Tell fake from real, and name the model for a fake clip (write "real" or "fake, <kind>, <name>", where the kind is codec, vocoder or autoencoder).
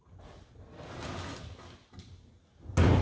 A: real